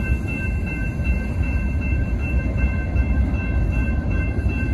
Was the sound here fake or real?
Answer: fake